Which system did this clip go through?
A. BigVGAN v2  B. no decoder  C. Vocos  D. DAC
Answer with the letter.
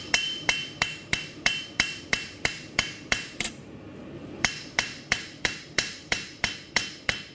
A